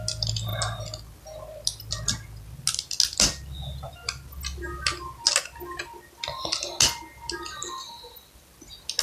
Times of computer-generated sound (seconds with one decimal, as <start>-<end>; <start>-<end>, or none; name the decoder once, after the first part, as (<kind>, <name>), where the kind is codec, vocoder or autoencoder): none